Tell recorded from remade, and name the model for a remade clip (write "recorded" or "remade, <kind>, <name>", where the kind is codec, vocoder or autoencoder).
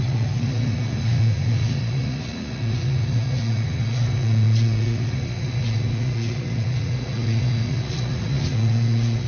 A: remade, vocoder, Vocos